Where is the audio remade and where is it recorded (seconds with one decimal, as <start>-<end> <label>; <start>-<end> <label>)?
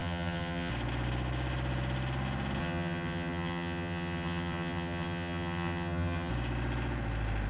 0.0-0.7 remade; 0.7-2.6 recorded; 2.6-6.3 remade; 6.3-7.5 recorded